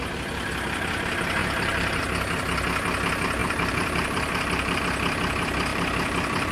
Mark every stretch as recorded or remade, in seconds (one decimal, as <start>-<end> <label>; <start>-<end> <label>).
0.0-1.4 recorded; 1.4-2.0 remade; 2.0-3.4 recorded; 3.4-4.8 remade; 4.8-5.7 recorded; 5.7-6.5 remade